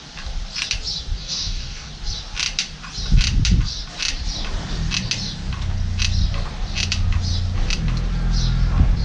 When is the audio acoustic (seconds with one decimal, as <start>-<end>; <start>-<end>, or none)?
0.0-1.2; 1.9-9.0